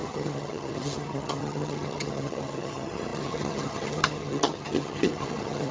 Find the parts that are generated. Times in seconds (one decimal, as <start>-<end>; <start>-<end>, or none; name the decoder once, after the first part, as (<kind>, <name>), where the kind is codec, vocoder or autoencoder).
0.0-5.7 (vocoder, HiFi-GAN)